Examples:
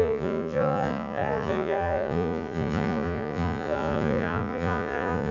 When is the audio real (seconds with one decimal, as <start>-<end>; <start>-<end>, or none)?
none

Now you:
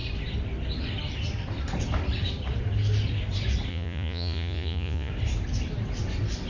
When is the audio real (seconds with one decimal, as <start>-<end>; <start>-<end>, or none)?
0.0-3.7; 5.1-6.5

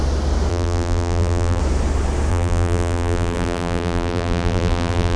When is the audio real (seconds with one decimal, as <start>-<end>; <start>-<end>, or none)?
0.0-0.5; 1.6-2.3

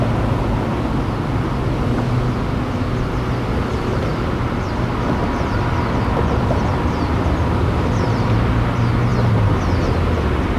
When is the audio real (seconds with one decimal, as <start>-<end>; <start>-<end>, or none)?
0.0-10.6

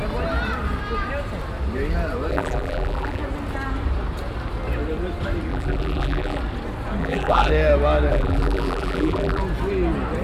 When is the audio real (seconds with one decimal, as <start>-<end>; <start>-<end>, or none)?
0.0-2.3; 3.2-5.5; 6.4-7.0; 7.5-8.1; 9.4-10.2

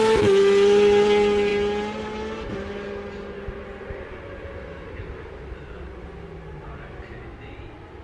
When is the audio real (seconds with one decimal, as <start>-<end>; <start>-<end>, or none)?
0.0-8.0

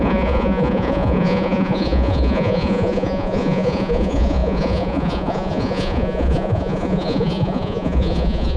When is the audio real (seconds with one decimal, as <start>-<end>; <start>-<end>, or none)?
none